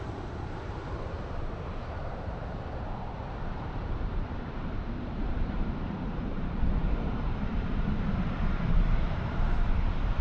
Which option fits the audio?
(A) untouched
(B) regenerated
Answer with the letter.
B